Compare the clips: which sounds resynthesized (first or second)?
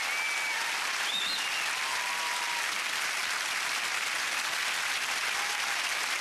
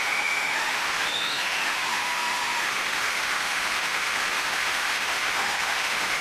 second